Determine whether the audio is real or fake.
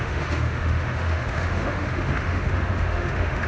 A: fake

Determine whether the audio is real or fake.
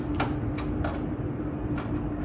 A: real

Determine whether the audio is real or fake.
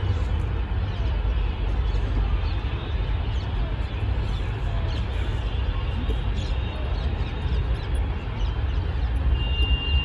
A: real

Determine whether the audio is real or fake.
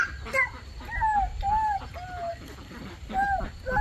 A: real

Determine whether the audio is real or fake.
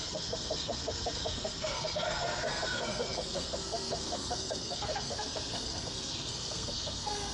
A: fake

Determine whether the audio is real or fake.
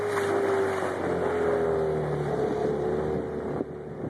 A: real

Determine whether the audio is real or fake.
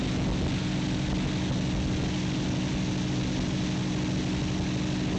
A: real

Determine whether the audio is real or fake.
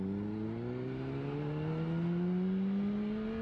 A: real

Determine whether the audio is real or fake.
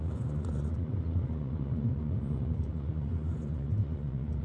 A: fake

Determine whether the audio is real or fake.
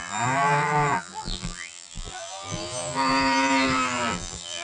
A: fake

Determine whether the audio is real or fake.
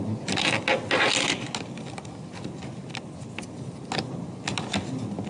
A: real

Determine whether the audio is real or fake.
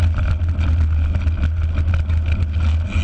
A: real